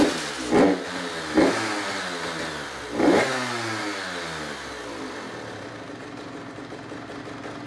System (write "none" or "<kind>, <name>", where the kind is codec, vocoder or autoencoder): none